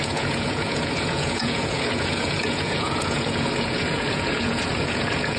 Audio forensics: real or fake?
fake